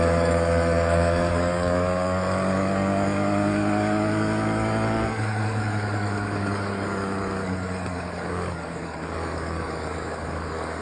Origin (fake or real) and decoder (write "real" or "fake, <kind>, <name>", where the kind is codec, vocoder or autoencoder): fake, codec, DAC